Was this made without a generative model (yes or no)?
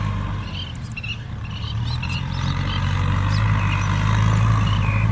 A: yes